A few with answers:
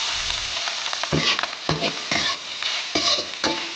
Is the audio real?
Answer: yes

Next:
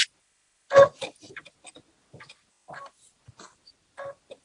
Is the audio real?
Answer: no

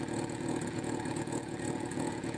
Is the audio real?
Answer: no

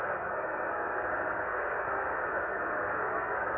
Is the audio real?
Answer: no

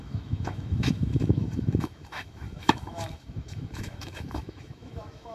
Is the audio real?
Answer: no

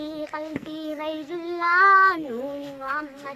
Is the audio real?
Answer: no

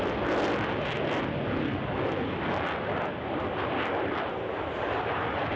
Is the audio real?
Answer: yes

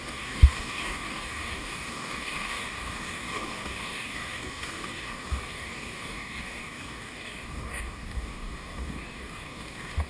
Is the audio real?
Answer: no